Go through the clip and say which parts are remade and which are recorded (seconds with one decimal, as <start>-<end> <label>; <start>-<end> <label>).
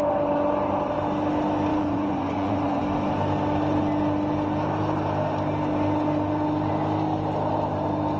0.0-1.7 recorded; 1.7-2.8 remade; 2.8-8.2 recorded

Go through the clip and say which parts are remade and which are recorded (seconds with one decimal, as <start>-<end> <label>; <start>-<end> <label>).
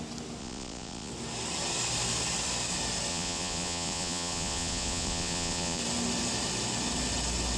0.0-0.4 recorded; 0.4-1.1 remade; 1.1-3.1 recorded; 3.1-5.8 remade; 5.8-7.6 recorded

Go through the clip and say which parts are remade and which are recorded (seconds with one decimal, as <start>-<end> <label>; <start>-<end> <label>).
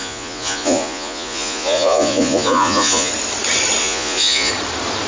0.0-3.1 remade; 3.1-3.8 recorded; 3.8-4.5 remade; 4.5-5.1 recorded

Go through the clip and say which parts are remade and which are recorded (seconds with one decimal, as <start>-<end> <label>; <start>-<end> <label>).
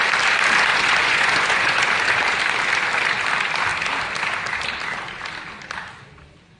0.0-0.7 recorded; 0.7-1.9 remade; 1.9-6.6 recorded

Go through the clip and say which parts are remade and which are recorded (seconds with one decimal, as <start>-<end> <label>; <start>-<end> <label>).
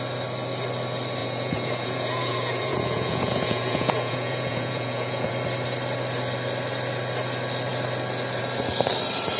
0.0-1.2 recorded; 1.2-5.3 remade; 5.3-9.4 recorded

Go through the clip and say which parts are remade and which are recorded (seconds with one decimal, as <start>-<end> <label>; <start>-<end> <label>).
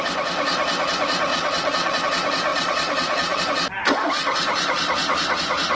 0.0-1.3 recorded; 1.3-2.0 remade; 2.0-2.5 recorded; 2.5-3.4 remade; 3.4-5.7 recorded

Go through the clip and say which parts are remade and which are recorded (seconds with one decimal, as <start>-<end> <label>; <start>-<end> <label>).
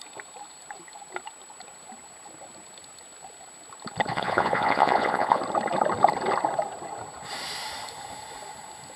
0.0-4.1 recorded; 4.1-5.4 remade; 5.4-9.0 recorded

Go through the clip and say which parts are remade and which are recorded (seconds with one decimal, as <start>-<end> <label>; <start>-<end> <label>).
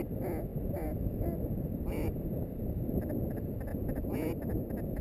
0.0-3.7 recorded; 3.7-5.0 remade